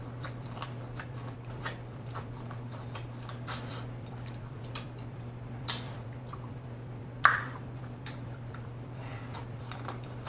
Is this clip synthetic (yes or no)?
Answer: yes